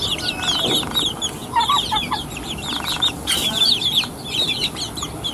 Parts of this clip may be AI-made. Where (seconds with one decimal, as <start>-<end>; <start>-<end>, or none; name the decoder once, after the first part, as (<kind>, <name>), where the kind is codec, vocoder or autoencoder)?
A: 0.0-5.3 (vocoder, BigVGAN v2)